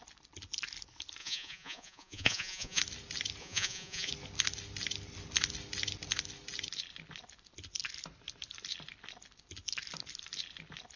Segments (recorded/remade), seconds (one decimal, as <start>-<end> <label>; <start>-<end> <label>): 0.0-1.2 recorded; 1.2-2.8 remade; 2.8-3.4 recorded; 3.4-4.1 remade; 4.1-11.0 recorded